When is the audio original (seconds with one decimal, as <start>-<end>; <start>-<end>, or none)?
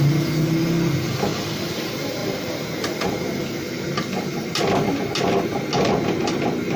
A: 0.0-1.3; 1.8-2.2; 3.1-3.7; 4.4-6.8